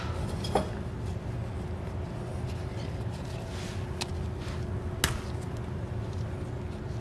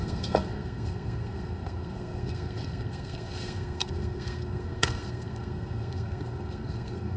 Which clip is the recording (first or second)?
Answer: first